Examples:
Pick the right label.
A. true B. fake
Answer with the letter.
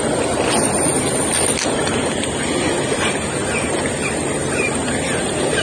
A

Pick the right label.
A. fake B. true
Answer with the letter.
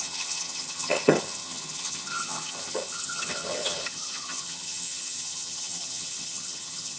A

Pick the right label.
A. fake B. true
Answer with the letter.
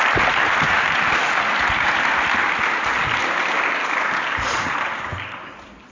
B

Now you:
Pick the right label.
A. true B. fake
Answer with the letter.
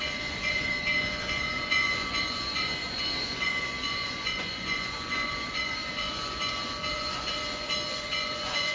B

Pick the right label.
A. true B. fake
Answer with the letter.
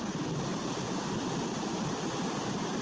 A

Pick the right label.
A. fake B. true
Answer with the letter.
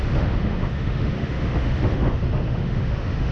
A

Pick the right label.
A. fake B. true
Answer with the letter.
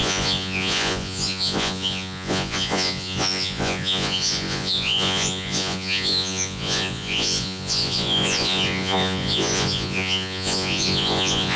A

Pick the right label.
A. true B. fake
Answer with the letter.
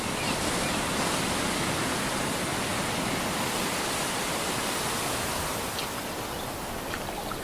A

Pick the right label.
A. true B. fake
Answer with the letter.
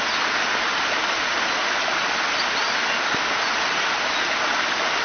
A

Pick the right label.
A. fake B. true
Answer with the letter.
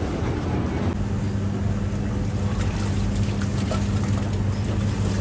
B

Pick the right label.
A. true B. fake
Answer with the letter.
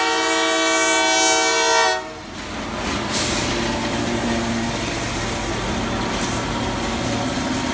A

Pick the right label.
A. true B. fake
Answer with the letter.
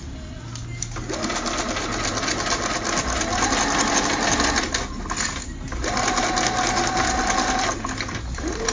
A